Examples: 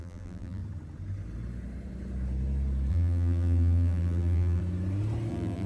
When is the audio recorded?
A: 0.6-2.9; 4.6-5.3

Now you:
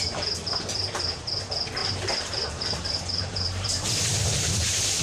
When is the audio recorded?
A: 0.0-1.8

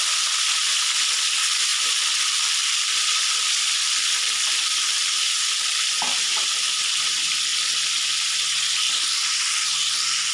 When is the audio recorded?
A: 0.0-10.3

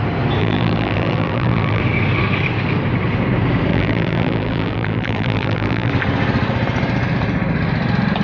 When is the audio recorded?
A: 0.0-0.4; 1.8-3.7; 5.9-8.2

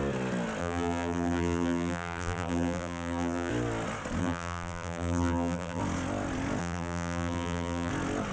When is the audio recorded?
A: 0.0-0.6; 3.5-4.2; 5.8-6.6; 7.9-8.3

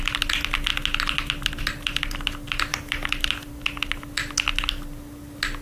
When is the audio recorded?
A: 0.0-2.7; 3.3-5.6

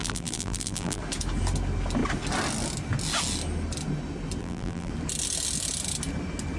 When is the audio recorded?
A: 1.0-4.4; 4.9-6.6